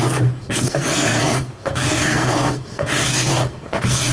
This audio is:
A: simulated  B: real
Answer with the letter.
A